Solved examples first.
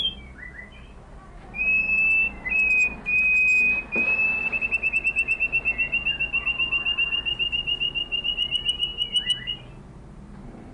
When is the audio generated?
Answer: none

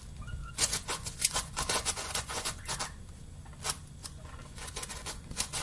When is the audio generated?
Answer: 0.4-2.8 (vocoder, Vocos); 4.0-5.6